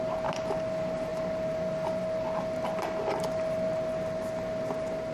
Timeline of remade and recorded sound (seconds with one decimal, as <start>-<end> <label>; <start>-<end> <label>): 0.0-5.1 recorded